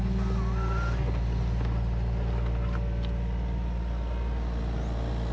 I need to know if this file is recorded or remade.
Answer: recorded